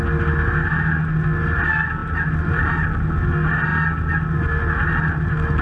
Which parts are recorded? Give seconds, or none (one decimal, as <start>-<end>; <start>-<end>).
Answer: 0.0-5.6